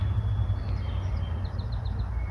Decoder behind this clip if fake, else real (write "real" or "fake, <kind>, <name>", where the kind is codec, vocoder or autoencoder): real